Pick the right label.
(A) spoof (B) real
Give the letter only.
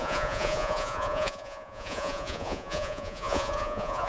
A